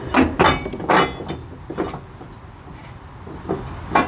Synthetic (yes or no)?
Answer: no